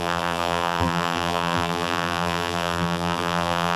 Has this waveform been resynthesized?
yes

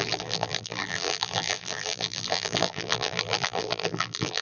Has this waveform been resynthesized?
yes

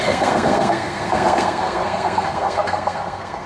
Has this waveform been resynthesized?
yes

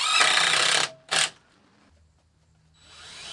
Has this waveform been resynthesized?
no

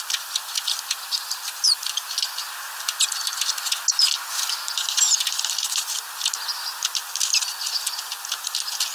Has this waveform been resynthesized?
no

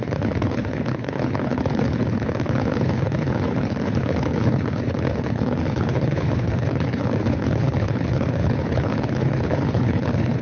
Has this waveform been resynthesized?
yes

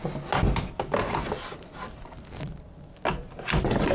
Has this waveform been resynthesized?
no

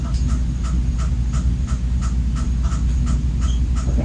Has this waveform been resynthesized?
no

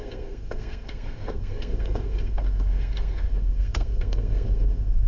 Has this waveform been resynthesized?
yes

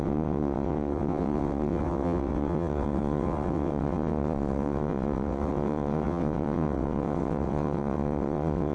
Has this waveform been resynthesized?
yes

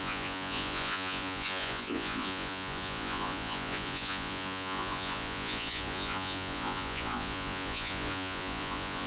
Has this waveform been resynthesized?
yes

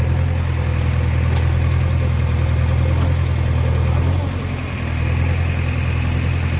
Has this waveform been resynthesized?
no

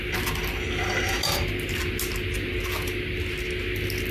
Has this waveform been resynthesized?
no